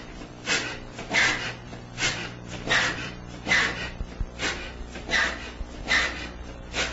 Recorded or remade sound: remade